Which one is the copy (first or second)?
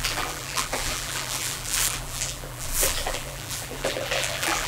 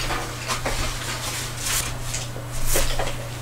first